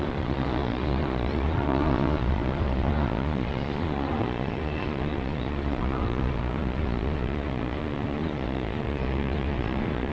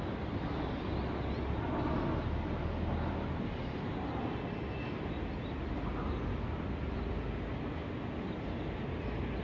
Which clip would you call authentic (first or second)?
second